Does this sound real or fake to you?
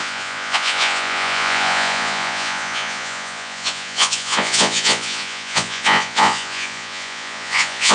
fake